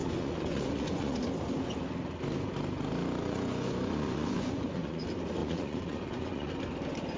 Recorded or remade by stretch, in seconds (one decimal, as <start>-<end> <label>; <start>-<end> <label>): 0.0-1.2 remade; 1.2-3.2 recorded; 3.2-5.0 remade; 5.0-5.4 recorded; 5.4-6.5 remade; 6.5-7.2 recorded